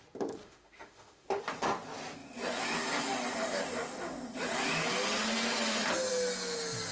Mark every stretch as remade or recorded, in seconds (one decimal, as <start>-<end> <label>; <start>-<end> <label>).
0.0-0.4 recorded; 0.4-1.4 remade; 1.4-6.9 recorded